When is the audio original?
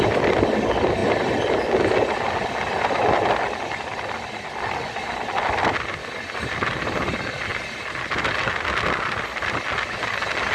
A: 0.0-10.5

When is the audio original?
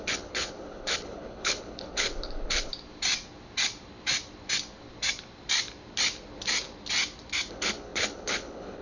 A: 2.7-7.5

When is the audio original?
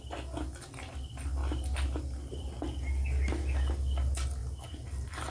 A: 0.0-5.3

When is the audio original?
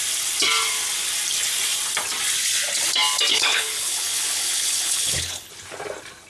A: 0.0-3.3; 5.5-6.3